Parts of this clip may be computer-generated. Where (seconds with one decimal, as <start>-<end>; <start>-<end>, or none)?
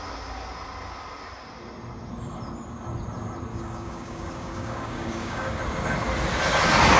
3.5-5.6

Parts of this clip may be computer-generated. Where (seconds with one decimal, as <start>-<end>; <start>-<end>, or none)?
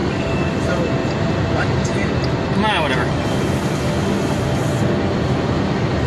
0.0-0.5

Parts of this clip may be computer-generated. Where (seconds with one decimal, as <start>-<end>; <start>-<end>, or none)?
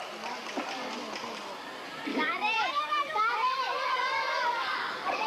2.1-5.3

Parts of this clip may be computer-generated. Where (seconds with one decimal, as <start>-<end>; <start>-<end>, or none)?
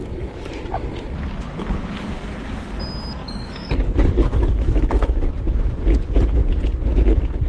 0.0-0.5; 1.8-2.8; 3.2-5.3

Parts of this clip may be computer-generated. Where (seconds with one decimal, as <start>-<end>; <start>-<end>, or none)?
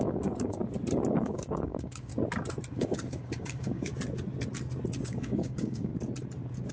0.0-0.6; 1.1-2.1; 2.7-3.9; 5.0-5.9